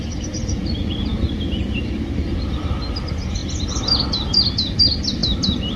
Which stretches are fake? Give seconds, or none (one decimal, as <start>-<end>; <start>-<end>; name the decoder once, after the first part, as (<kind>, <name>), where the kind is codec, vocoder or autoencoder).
none